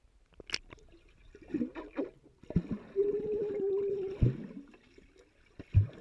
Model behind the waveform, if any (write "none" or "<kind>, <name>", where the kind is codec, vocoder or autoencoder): none